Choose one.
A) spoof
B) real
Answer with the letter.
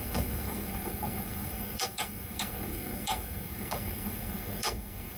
A